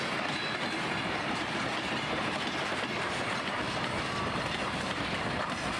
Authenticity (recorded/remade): remade